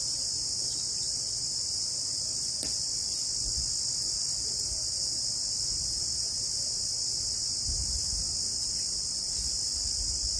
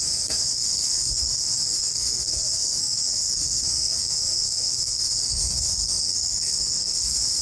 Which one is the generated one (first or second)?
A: second